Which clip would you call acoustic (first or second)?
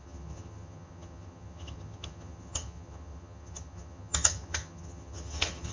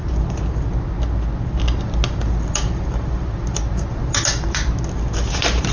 second